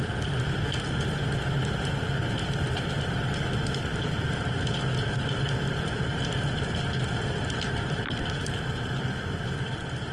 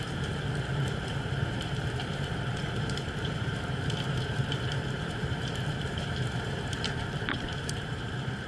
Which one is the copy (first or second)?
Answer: second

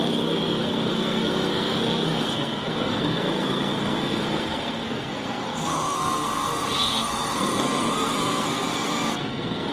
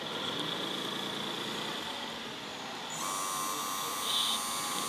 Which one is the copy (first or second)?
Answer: first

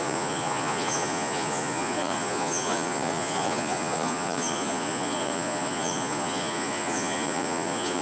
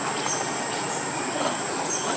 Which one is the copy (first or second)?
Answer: first